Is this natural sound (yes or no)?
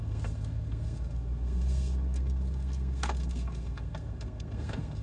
no